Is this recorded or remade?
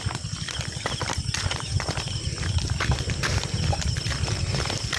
recorded